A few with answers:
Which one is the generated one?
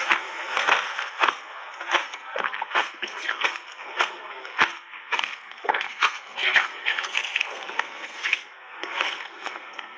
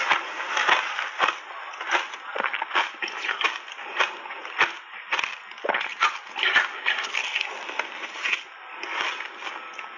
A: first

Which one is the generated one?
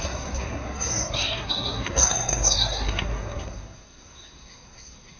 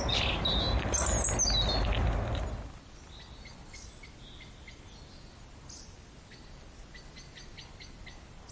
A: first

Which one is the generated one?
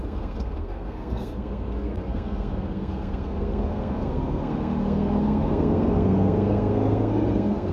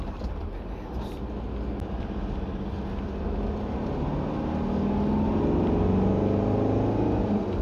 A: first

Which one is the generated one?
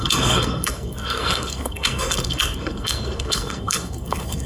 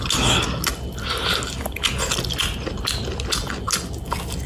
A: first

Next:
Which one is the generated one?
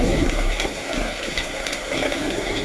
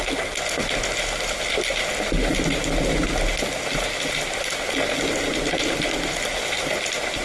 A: first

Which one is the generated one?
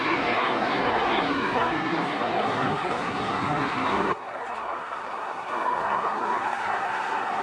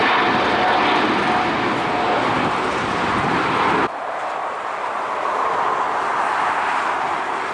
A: first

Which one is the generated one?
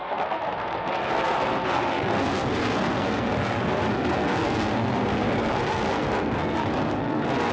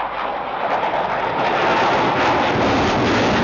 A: first